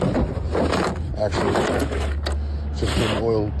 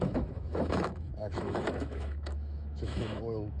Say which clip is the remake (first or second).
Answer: second